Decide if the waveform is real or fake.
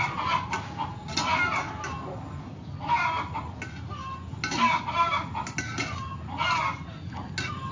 real